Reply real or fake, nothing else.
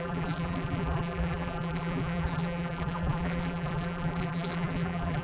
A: fake